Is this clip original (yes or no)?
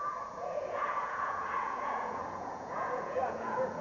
no